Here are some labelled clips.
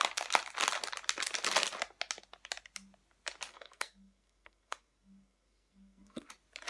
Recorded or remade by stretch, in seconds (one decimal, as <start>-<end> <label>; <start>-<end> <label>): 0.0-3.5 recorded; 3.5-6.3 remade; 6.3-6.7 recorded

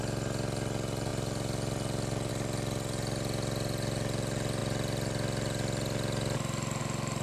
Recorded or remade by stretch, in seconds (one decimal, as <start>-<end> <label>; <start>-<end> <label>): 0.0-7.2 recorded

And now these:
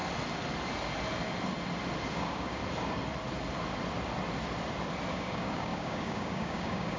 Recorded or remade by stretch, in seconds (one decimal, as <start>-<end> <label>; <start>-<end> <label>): 0.0-2.1 recorded; 2.1-2.6 remade; 2.6-5.1 recorded; 5.1-7.0 remade

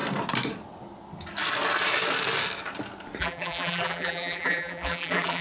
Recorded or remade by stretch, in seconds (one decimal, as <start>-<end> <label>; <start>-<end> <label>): 0.0-3.2 recorded; 3.2-5.4 remade